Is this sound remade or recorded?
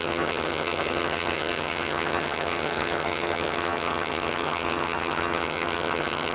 remade